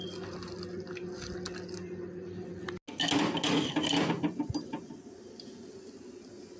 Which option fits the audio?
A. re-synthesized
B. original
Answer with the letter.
B